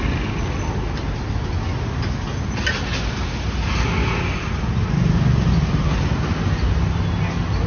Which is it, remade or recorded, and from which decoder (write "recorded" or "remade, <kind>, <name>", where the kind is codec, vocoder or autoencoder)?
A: recorded